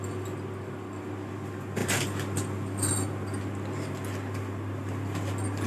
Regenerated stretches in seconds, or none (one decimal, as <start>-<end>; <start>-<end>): 1.8-2.9